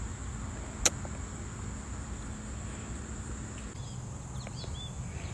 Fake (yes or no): no